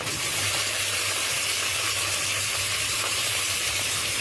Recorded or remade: remade